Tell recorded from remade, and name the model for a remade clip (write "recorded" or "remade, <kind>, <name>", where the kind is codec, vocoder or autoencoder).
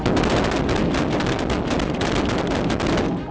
recorded